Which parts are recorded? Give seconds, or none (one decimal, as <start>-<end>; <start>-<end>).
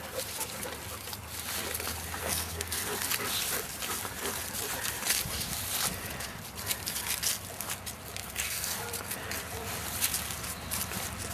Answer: 0.0-2.2; 2.9-8.2; 8.8-11.3